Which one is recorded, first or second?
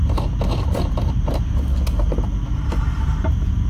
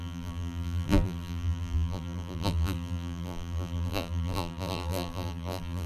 first